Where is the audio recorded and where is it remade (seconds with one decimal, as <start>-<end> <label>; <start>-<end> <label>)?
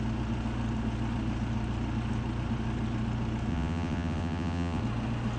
0.0-3.5 recorded; 3.5-4.8 remade; 4.8-5.4 recorded